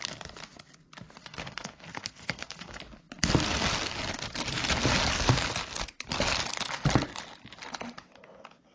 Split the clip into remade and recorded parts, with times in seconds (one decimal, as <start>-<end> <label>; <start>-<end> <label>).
0.0-1.2 recorded; 1.2-2.8 remade; 2.8-8.7 recorded